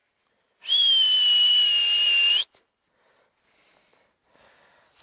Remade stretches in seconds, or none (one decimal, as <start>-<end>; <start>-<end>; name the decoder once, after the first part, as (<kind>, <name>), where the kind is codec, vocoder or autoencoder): 0.0-3.0 (vocoder, BigVGAN v2)